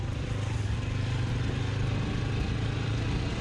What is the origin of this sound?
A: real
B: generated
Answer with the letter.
A